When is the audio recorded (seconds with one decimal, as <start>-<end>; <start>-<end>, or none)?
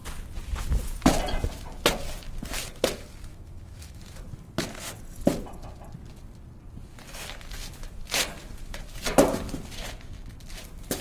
0.0-3.3; 4.0-11.0